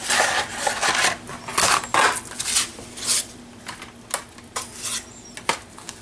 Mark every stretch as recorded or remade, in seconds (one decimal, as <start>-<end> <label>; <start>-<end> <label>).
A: 0.0-6.0 recorded